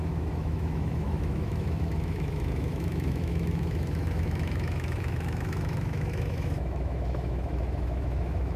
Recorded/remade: remade